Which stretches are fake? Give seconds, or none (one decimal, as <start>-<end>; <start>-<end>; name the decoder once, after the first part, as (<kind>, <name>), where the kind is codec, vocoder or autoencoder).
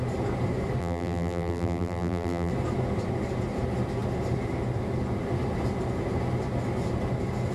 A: 0.8-2.5 (vocoder, BigVGAN v2)